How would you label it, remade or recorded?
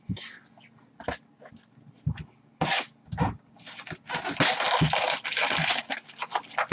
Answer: recorded